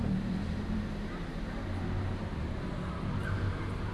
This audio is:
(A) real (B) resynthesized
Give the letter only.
B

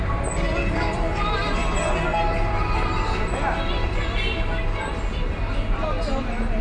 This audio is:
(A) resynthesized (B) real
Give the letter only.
B